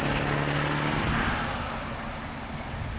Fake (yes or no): no